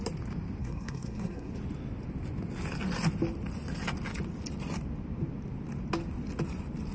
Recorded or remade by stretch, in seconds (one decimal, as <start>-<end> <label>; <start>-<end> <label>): 0.0-0.6 recorded; 0.6-1.5 remade; 1.5-6.9 recorded